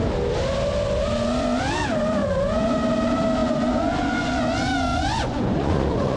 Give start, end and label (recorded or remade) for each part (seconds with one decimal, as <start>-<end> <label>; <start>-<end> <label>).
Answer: 0.0-2.2 recorded; 2.2-2.8 remade; 2.8-3.4 recorded; 3.4-4.4 remade; 4.4-4.9 recorded; 4.9-6.2 remade